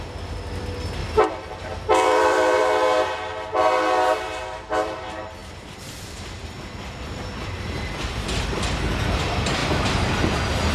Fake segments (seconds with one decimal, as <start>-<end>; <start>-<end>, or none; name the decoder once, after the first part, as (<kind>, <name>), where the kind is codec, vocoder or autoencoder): 1.0-2.6 (vocoder, BigVGAN v2); 5.4-6.2; 7.3-9.2

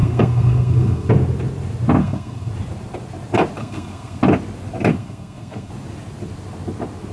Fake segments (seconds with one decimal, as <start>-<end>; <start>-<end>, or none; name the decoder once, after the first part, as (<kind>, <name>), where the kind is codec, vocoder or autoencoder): 0.0-1.1 (codec, SNAC); 2.0-2.5; 3.6-4.2; 4.9-5.7

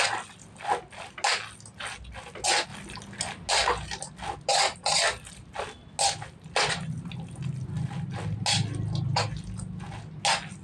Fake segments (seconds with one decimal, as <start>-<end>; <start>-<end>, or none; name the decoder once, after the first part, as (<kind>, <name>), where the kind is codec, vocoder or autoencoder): none

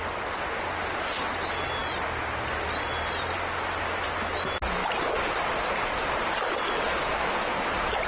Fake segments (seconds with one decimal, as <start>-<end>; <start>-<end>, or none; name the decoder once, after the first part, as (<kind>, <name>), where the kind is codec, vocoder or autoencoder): 4.8-5.4 (vocoder, BigVGAN v2)

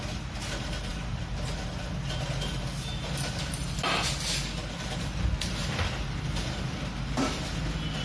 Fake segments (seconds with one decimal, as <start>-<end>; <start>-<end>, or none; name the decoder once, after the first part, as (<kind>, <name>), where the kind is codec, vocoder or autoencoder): none

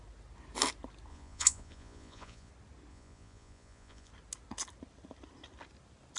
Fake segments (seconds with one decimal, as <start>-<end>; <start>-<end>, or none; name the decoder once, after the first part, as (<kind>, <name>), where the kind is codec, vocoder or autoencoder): 1.1-2.5 (vocoder, Vocos); 2.9-4.1

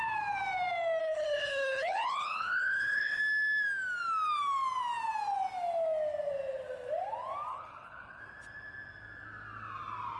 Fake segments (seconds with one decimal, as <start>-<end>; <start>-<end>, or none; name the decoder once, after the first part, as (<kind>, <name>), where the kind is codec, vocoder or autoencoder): 1.0-3.2 (codec, HILCodec); 7.5-8.2